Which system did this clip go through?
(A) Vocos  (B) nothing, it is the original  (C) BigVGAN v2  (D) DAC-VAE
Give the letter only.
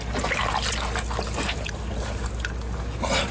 B